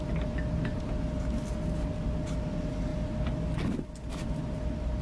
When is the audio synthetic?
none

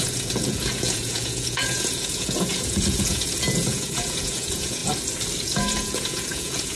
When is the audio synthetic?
0.0-4.8 (vocoder, Vocos); 5.4-6.8